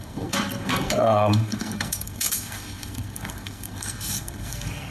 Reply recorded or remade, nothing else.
remade